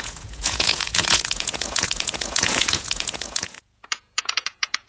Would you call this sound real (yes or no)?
no